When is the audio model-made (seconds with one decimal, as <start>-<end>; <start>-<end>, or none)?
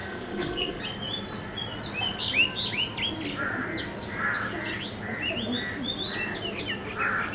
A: 0.0-0.8